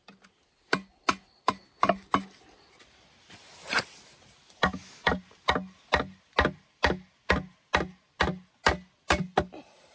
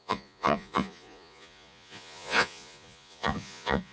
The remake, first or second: second